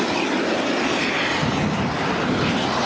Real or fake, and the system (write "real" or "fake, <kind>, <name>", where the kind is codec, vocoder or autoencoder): real